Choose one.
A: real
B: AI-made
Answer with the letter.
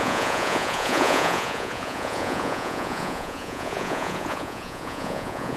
B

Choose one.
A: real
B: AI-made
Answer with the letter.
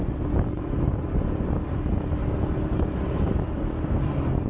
A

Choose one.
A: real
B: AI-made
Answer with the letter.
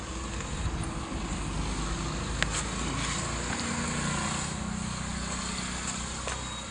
A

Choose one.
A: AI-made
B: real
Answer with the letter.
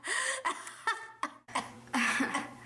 A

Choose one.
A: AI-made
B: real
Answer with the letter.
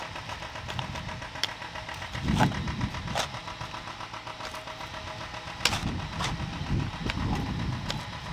B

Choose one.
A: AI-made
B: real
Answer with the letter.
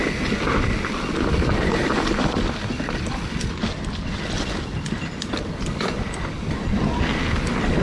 B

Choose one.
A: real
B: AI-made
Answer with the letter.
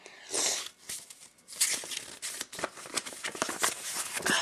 A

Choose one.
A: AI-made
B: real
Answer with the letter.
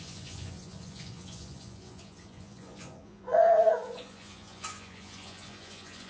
A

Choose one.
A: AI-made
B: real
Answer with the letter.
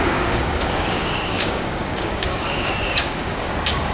A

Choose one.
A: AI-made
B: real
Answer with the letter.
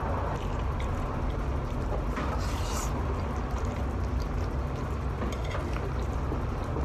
B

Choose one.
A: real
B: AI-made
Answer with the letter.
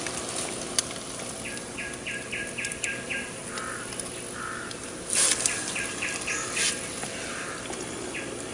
A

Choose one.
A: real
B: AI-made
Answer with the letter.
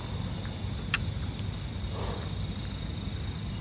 A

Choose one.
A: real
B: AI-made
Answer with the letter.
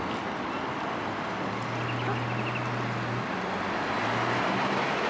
A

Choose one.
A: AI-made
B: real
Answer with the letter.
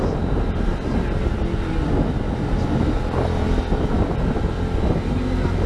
B